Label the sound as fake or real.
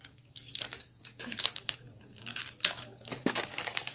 fake